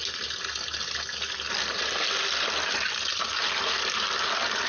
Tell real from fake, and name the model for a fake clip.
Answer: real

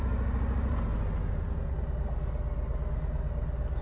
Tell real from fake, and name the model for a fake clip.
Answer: real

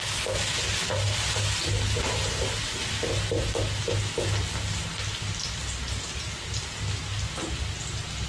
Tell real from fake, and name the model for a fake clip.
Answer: real